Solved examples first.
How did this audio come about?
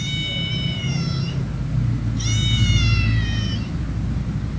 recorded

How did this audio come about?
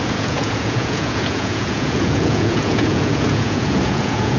remade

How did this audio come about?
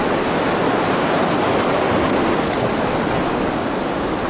recorded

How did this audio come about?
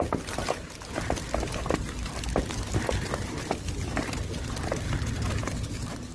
recorded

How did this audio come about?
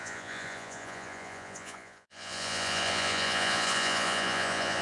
remade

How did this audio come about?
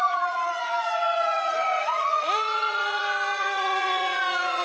remade